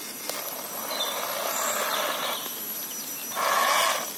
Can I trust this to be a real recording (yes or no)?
yes